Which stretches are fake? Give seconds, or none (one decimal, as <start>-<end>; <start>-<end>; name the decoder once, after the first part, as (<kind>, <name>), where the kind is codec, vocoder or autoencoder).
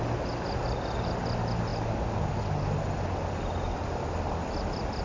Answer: none